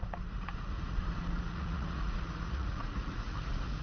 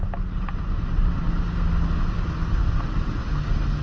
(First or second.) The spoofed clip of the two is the first